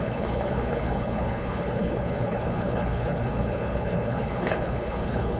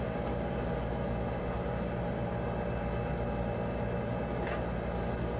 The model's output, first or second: first